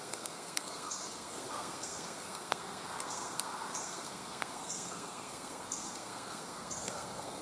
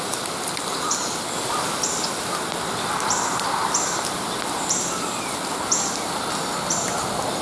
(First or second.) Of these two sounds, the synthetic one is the first